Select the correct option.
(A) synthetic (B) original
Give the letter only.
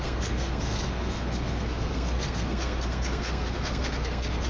A